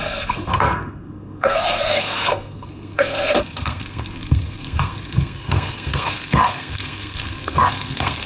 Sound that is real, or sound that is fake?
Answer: fake